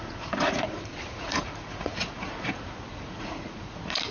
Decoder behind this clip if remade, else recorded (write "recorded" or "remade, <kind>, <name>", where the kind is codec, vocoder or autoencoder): remade, vocoder, Vocos